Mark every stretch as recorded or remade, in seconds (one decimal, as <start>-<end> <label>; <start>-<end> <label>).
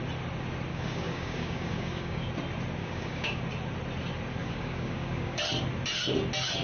0.0-0.7 recorded; 0.7-2.3 remade; 2.3-2.8 recorded; 2.8-3.4 remade; 3.4-4.4 recorded; 4.4-5.4 remade; 5.4-6.6 recorded